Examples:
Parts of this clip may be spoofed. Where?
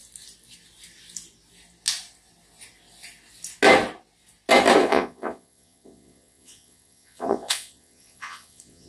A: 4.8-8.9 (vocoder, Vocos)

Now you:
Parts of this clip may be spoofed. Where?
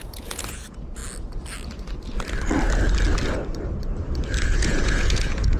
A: 0.0-1.0 (vocoder, Vocos); 4.4-5.6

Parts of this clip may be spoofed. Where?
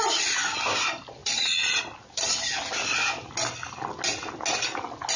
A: 1.2-1.8 (vocoder, Vocos)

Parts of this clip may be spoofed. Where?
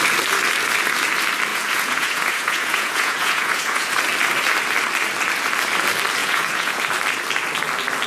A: 1.5-3.9 (vocoder, Vocos); 6.2-6.8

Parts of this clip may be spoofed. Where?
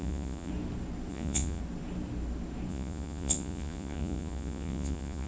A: 0.0-0.5 (vocoder, Vocos); 1.1-1.6; 2.7-5.3